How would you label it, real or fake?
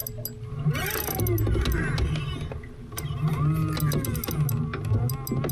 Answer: real